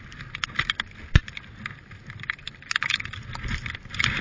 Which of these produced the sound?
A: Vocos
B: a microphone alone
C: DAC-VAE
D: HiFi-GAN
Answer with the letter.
B